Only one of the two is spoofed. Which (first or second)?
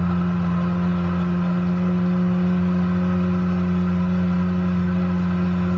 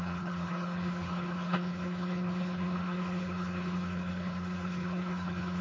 second